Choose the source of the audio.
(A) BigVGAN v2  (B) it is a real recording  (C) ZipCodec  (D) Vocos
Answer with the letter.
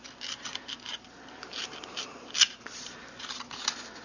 B